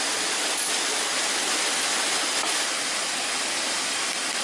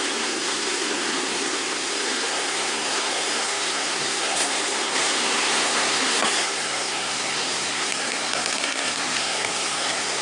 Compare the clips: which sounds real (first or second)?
first